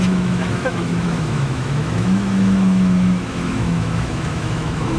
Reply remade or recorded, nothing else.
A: remade